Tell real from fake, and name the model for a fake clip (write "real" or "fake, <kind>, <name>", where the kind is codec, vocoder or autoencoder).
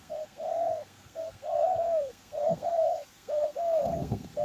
fake, codec, SNAC